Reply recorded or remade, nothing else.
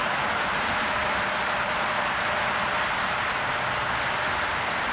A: recorded